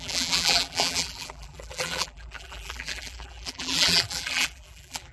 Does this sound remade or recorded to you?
remade